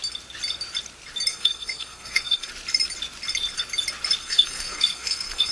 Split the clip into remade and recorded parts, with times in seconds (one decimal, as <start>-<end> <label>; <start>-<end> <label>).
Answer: 0.0-1.3 recorded; 1.3-2.5 remade; 2.5-4.2 recorded; 4.2-5.5 remade